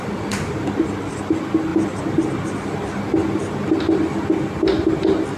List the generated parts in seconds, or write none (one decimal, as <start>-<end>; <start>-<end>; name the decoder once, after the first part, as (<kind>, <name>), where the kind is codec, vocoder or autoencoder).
none